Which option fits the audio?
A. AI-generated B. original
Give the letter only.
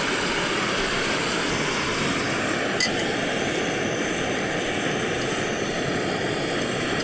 B